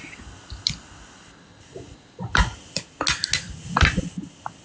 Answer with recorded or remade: recorded